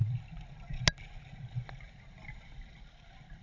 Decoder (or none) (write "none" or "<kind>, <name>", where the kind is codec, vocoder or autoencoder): none